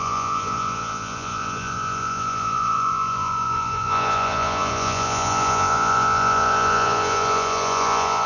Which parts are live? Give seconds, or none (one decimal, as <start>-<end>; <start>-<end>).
none